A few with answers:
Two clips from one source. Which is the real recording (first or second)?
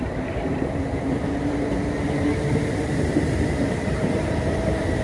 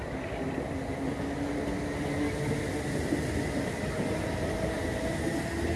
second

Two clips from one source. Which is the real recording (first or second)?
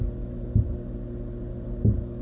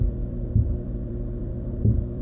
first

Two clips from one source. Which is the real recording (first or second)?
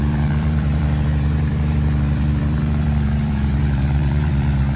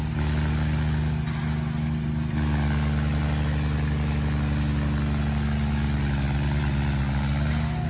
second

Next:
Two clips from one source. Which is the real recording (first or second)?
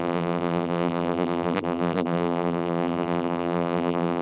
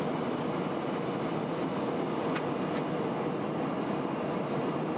second